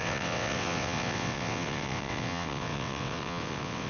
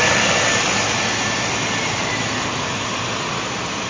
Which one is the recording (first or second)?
second